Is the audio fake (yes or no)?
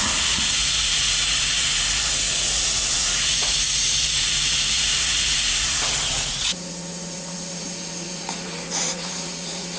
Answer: yes